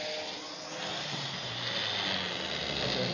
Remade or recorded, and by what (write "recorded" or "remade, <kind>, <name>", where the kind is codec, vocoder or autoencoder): recorded